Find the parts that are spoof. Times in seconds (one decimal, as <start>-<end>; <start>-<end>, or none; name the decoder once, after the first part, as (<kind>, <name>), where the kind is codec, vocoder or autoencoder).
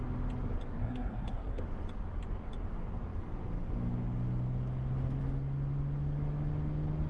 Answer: 0.8-1.6 (codec, SNAC)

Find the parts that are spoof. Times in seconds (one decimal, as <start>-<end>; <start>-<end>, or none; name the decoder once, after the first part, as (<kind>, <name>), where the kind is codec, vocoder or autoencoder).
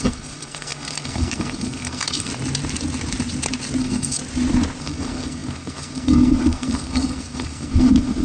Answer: 0.0-2.3 (codec, SNAC); 3.8-4.2; 4.8-8.2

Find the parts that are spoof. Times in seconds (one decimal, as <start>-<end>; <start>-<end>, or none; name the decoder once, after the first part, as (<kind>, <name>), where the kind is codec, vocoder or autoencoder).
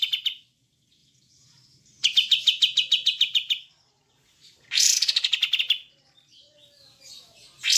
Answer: 1.0-5.6 (vocoder, BigVGAN v2)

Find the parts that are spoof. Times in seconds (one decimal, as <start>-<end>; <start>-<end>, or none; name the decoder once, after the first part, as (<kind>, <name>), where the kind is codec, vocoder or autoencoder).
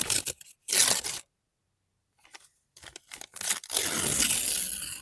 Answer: none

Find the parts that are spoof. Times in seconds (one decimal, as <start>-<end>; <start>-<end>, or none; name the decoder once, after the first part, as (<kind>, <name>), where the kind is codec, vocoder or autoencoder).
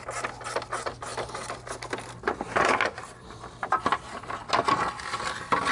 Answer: none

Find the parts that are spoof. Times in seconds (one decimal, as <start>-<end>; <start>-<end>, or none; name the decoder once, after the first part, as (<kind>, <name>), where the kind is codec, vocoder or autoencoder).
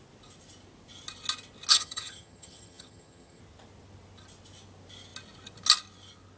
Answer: 1.7-3.4 (vocoder, HiFi-GAN)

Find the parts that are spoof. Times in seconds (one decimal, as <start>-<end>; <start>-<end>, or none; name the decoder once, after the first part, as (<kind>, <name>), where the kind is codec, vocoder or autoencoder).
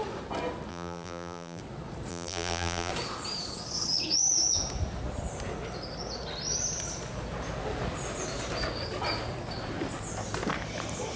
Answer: 0.7-1.6 (vocoder, BigVGAN v2); 2.1-2.9